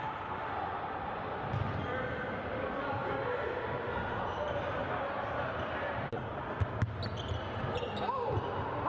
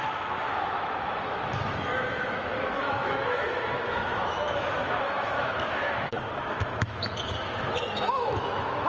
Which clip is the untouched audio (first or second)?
first